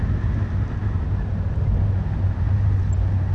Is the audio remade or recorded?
recorded